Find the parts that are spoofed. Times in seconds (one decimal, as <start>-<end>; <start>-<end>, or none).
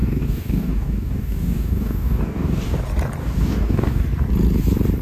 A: 0.0-2.8; 3.2-4.0